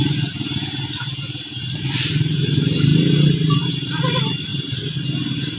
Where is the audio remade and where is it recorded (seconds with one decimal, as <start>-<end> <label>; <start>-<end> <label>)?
0.0-2.9 remade; 2.9-4.0 recorded; 4.0-4.5 remade; 4.5-5.6 recorded